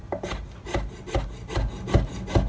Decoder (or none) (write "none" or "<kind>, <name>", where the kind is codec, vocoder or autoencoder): none